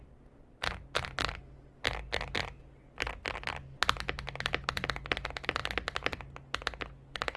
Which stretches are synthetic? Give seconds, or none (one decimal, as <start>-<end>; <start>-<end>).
none